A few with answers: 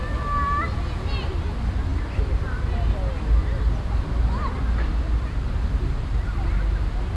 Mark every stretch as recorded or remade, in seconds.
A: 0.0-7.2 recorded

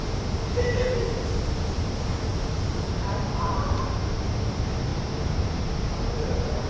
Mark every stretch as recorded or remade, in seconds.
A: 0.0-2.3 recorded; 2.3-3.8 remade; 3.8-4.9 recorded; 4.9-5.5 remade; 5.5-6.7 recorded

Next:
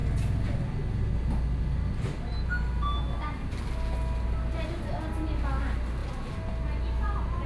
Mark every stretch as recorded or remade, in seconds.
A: 0.0-7.5 recorded

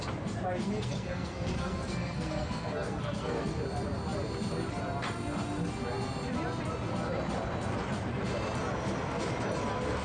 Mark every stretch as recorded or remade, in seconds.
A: 0.0-0.6 recorded; 0.6-3.5 remade; 3.5-10.0 recorded

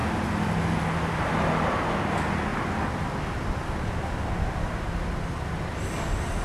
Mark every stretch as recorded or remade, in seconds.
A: 0.0-6.4 recorded

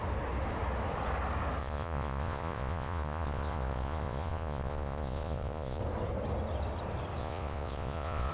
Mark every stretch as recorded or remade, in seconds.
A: 0.0-1.6 recorded; 1.6-5.8 remade; 5.8-7.2 recorded; 7.2-8.3 remade

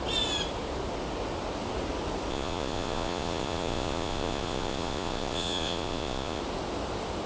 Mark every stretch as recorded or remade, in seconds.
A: 0.0-2.3 recorded; 2.3-6.4 remade; 6.4-7.3 recorded

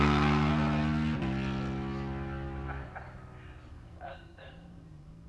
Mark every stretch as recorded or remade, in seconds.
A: 0.0-0.5 remade; 0.5-3.7 recorded; 3.7-5.3 remade